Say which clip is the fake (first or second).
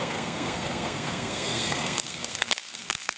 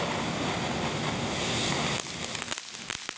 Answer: first